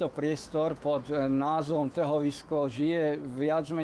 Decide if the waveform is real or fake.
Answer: fake